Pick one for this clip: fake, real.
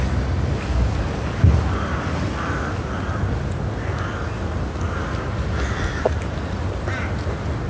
real